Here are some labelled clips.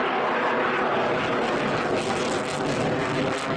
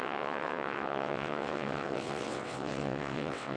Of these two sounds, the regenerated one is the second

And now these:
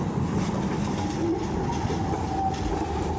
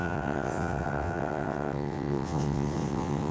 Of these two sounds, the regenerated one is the second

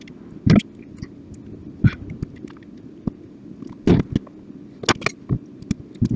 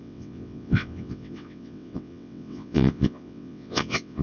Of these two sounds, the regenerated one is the second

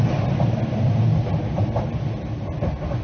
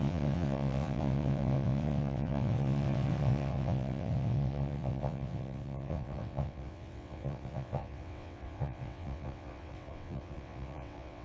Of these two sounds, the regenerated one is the second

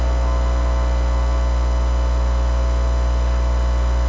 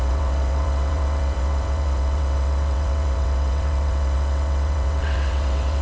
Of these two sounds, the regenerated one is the second